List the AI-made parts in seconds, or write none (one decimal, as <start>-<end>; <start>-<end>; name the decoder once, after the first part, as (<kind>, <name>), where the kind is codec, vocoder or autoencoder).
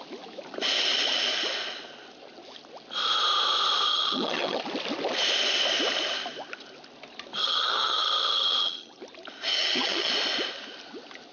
3.9-4.6 (vocoder, HiFi-GAN); 7.4-9.0; 9.5-10.1